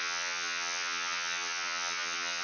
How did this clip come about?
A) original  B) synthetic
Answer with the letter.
B